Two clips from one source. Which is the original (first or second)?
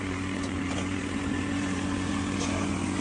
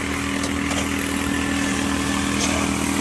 second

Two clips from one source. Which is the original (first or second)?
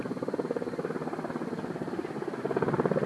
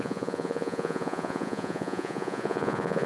first